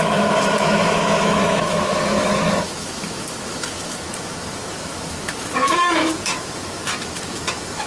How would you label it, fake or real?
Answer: fake